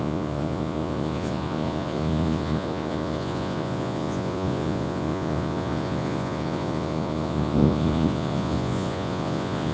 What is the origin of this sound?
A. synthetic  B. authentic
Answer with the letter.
A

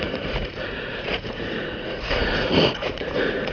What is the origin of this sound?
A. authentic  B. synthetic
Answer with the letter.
B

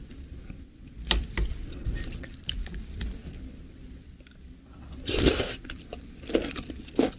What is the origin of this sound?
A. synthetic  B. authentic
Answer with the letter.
A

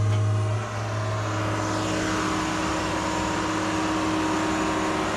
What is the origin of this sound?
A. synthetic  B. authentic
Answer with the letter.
B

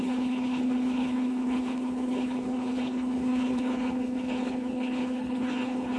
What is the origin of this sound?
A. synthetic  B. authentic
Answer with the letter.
A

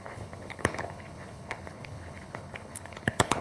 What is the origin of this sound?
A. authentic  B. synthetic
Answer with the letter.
B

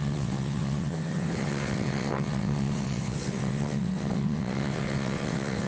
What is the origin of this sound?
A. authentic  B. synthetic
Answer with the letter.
B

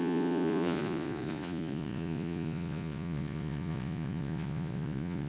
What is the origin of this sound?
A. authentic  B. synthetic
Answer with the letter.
B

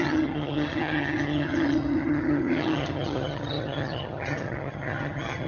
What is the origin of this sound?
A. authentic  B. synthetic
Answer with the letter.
B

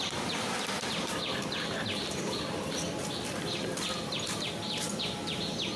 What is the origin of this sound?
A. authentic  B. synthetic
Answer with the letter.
A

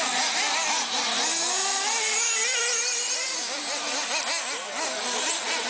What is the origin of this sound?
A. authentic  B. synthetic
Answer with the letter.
A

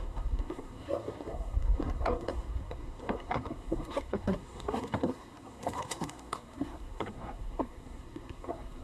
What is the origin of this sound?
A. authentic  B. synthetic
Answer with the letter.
B